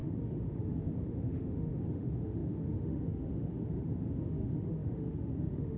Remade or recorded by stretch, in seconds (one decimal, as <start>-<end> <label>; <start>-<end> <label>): 0.0-5.8 remade